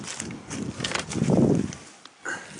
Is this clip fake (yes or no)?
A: no